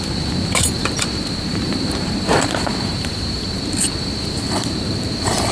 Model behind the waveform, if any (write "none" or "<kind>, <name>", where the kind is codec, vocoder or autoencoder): vocoder, BigVGAN v2